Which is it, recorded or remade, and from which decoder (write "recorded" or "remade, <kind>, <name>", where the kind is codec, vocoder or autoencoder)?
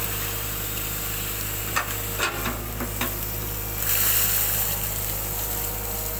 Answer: recorded